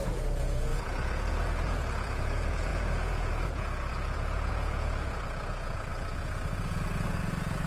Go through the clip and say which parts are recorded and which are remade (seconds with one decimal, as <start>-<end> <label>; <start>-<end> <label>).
0.0-7.7 remade